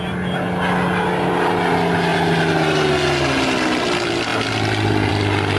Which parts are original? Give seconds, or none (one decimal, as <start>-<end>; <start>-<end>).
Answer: 0.0-5.6